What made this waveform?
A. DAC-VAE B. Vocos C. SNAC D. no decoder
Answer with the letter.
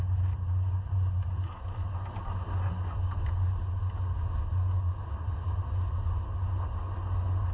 D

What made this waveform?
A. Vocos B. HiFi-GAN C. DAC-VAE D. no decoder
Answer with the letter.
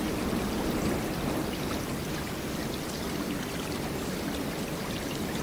D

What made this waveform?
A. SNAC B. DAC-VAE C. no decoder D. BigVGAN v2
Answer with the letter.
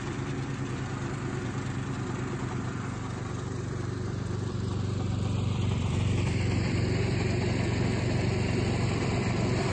D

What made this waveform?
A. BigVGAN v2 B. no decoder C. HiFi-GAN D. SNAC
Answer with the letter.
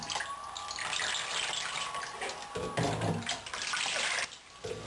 B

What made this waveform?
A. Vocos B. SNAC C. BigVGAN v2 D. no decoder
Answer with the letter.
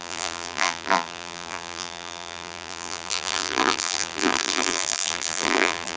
C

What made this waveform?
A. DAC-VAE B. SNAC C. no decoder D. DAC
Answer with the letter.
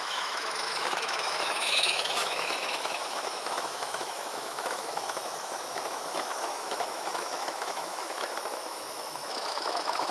A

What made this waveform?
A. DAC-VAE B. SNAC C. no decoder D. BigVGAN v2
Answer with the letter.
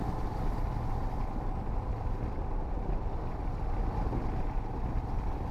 C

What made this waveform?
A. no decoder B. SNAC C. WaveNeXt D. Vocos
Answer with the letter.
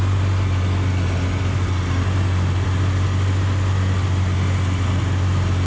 A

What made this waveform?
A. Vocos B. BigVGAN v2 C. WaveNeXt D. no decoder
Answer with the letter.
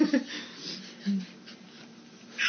D